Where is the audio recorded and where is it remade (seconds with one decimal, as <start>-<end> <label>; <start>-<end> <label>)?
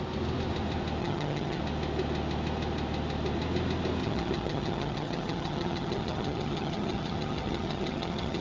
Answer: 0.0-1.0 recorded; 1.0-1.6 remade; 1.6-4.0 recorded; 4.0-8.4 remade